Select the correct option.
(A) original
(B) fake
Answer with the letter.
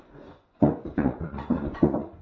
B